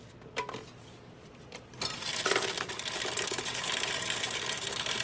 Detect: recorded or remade recorded